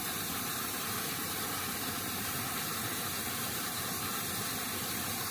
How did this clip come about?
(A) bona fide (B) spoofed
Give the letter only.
B